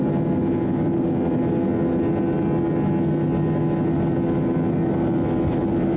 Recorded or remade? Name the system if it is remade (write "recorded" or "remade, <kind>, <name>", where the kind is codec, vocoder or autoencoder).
recorded